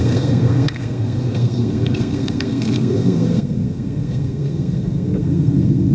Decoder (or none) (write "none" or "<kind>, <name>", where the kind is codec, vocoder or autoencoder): codec, SNAC